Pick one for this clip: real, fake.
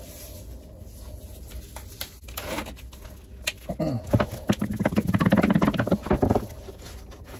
real